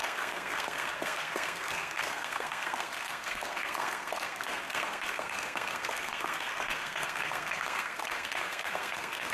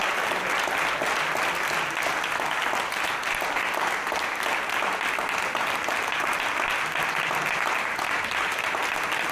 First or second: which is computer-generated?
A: first